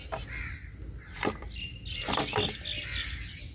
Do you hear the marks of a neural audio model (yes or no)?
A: no